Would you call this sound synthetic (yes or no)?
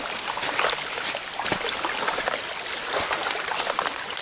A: no